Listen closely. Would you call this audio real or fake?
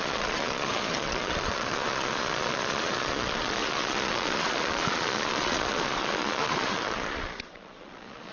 fake